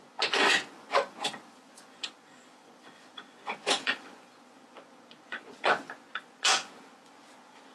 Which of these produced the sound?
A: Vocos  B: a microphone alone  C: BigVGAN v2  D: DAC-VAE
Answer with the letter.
A